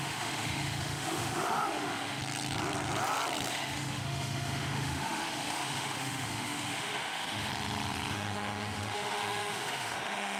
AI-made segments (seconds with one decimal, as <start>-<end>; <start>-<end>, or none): 0.0-2.2; 3.5-7.5; 8.1-10.4